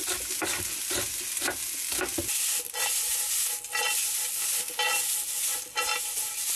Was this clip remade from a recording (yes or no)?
no